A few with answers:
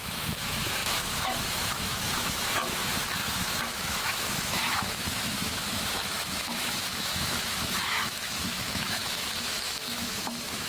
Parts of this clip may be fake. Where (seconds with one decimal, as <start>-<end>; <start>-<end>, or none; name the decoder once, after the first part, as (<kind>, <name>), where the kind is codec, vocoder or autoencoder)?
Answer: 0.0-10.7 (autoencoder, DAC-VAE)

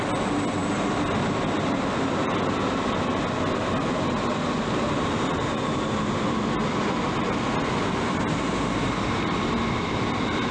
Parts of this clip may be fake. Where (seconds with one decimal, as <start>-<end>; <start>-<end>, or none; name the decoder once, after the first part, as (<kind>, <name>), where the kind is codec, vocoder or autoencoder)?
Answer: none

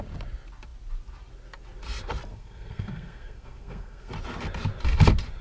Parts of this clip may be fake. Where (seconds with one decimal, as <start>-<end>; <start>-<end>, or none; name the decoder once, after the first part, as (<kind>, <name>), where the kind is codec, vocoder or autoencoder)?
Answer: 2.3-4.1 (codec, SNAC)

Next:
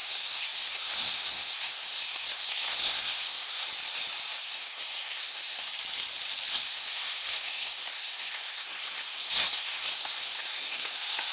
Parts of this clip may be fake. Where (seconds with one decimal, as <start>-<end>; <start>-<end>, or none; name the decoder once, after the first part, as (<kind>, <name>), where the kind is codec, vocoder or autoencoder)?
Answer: 0.0-3.6 (codec, SNAC); 4.4-5.7; 6.5-11.3

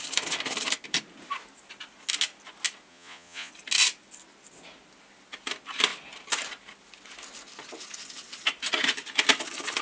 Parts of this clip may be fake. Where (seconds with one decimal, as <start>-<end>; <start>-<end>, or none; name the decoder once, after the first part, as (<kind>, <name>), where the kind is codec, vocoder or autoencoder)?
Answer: 2.9-3.5 (vocoder, Vocos)

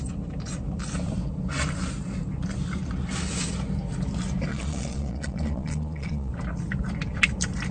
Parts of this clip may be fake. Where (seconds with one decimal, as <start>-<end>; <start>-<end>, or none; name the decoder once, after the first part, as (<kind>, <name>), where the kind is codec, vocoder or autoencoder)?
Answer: 4.5-6.3 (vocoder, Vocos)

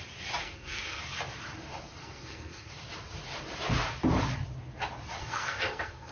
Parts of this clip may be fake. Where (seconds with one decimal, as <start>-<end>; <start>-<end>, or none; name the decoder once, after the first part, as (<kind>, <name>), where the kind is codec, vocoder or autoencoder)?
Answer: 0.4-1.0 (codec, SNAC); 2.0-2.7; 5.2-6.1

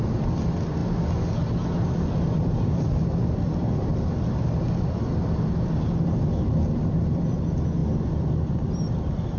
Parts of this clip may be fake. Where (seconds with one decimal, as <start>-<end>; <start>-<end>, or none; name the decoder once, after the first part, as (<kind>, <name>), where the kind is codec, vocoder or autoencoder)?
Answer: none